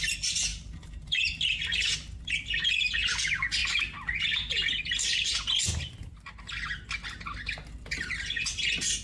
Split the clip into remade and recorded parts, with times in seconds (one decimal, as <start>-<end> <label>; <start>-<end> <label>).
0.0-0.5 recorded; 0.5-2.9 remade; 2.9-9.0 recorded